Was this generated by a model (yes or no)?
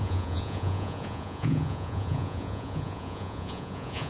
yes